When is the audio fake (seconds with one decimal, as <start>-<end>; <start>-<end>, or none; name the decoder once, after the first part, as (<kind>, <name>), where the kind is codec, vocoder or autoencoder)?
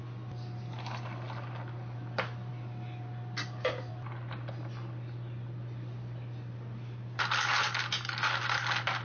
none